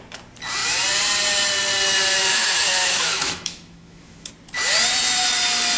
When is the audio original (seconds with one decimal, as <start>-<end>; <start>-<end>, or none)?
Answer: 0.0-2.3; 4.3-5.8